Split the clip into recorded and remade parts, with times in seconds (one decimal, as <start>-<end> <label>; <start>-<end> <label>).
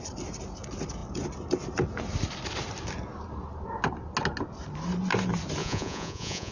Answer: 0.0-5.6 recorded; 5.6-6.5 remade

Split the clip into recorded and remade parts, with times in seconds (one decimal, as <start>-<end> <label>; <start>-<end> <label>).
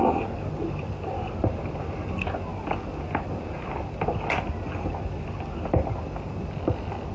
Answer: 0.0-7.1 recorded